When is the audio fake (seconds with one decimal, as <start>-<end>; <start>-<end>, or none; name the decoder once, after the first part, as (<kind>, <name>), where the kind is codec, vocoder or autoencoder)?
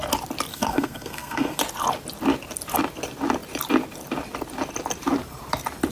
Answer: 0.5-1.6 (codec, SNAC)